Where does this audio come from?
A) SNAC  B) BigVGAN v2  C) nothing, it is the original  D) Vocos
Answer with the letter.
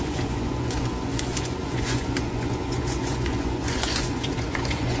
D